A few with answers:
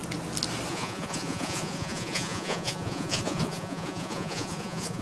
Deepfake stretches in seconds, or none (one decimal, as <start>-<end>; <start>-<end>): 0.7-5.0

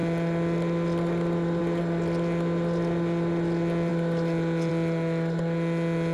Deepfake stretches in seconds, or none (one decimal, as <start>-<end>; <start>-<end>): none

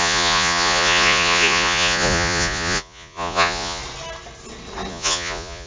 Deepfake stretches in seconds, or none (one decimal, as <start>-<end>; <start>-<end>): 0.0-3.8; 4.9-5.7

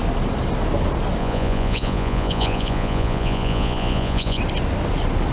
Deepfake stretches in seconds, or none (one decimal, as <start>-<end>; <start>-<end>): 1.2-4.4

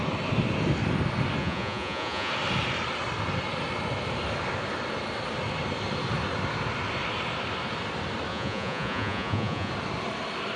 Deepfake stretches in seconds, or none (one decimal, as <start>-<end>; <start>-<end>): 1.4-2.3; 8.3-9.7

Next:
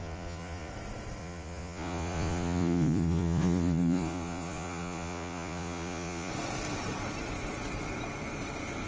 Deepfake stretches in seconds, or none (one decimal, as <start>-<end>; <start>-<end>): 0.0-0.7; 1.2-6.3